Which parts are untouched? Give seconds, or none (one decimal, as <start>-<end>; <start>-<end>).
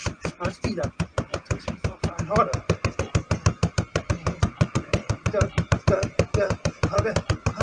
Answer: 0.0-4.4; 5.3-7.6